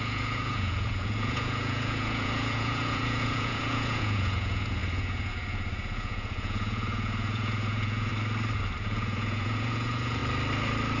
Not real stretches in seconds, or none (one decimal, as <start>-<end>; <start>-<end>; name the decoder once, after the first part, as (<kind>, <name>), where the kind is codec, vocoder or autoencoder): 0.0-8.1 (vocoder, Vocos); 8.8-10.2